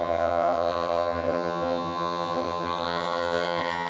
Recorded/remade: remade